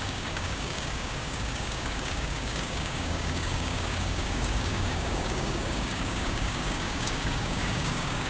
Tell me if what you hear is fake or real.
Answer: fake